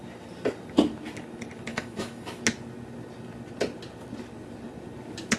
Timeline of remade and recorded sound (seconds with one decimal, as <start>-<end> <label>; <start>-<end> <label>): 0.0-1.7 recorded; 1.7-2.4 remade; 2.4-5.4 recorded